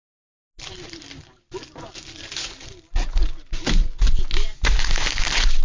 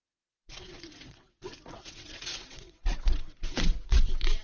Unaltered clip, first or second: first